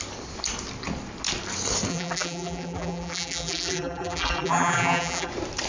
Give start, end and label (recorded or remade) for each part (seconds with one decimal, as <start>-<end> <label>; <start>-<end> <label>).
0.0-1.9 recorded; 1.9-5.3 remade; 5.3-5.7 recorded